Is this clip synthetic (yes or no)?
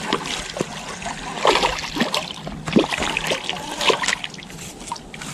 no